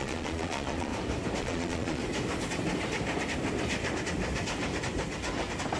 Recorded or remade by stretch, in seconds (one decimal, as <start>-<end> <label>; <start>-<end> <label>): 0.0-0.9 remade; 0.9-1.4 recorded; 1.4-2.0 remade; 2.0-5.8 recorded